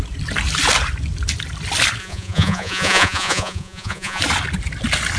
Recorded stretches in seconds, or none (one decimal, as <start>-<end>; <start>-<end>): 0.0-2.0; 4.2-5.2